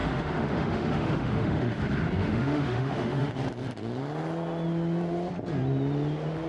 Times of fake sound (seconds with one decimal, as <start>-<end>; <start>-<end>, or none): 0.0-1.8; 2.2-3.3